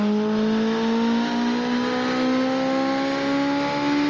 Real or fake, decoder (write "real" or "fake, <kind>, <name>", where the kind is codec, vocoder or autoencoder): real